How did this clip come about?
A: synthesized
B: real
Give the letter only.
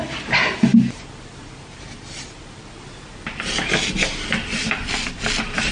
B